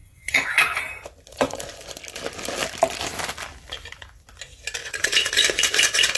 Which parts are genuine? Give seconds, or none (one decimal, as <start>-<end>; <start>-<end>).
0.8-1.3; 2.0-4.8